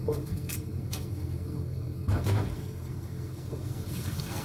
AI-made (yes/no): yes